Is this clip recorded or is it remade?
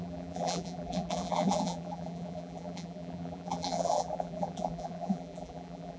remade